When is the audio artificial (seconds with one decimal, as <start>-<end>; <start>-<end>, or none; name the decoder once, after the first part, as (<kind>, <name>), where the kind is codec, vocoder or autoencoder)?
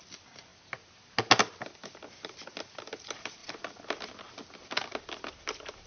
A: 0.0-0.5 (vocoder, BigVGAN v2); 2.8-3.4; 4.5-5.9